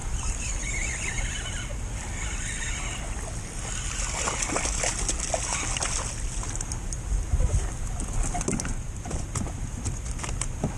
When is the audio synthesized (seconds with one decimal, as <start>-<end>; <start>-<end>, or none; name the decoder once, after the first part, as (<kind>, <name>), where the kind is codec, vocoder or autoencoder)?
none